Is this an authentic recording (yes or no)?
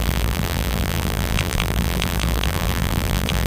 no